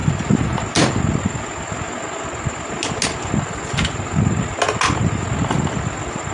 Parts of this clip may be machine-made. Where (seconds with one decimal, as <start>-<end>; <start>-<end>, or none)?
none